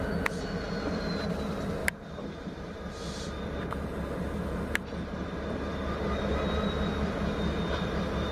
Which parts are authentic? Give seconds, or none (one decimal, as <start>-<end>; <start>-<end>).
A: 0.0-1.8; 5.3-8.3